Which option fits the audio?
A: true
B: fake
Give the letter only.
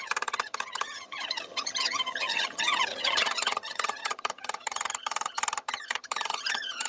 B